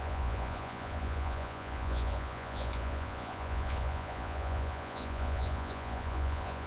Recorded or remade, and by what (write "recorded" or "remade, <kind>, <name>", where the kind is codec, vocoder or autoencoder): remade, vocoder, Vocos